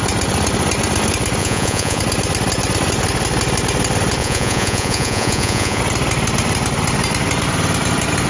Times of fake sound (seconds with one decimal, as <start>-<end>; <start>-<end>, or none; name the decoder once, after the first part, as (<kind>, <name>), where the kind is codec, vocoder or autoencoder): 1.4-2.0 (vocoder, Vocos); 4.2-5.8